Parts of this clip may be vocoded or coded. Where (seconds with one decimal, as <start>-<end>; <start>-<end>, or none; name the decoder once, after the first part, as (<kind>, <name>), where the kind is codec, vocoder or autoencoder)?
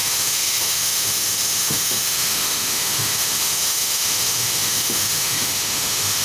0.0-6.2 (autoencoder, DAC-VAE)